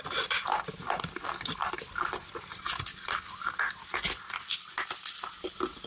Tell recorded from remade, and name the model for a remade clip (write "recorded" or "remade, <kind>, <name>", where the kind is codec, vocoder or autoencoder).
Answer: recorded